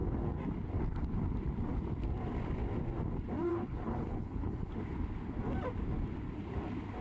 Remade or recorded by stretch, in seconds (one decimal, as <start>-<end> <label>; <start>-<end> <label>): 0.0-3.5 recorded; 3.5-4.7 remade; 4.7-7.0 recorded